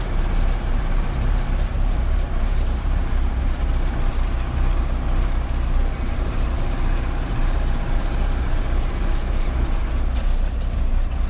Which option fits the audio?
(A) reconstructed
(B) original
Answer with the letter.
A